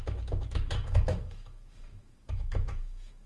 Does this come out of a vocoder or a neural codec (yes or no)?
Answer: yes